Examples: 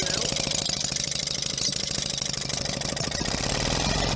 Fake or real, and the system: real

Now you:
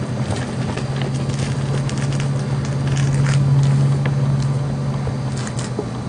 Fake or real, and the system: real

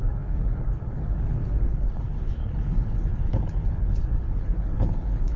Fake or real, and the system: fake, codec, HILCodec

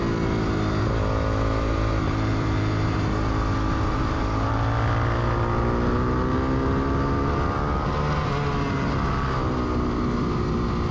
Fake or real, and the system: real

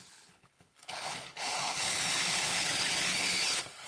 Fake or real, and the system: fake, codec, HILCodec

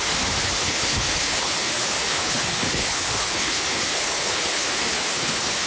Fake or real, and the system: fake, codec, HILCodec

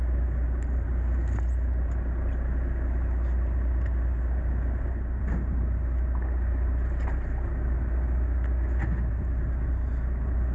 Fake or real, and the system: real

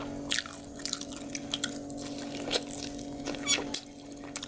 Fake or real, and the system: real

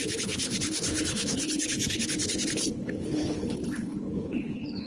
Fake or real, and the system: fake, codec, HILCodec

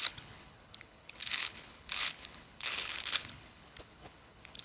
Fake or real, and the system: fake, codec, HILCodec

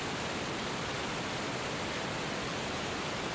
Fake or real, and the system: real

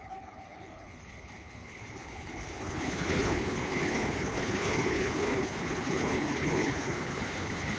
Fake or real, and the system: fake, codec, HILCodec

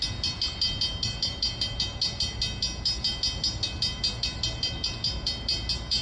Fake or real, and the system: real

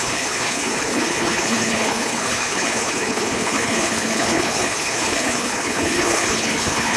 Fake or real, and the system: fake, codec, HILCodec